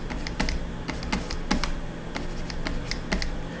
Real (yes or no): yes